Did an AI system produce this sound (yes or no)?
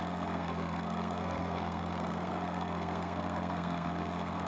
yes